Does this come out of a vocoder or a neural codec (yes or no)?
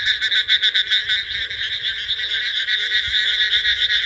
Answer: no